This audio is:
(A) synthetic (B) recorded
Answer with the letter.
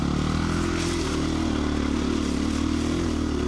B